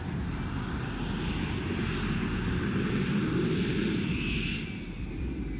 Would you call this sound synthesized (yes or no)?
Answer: no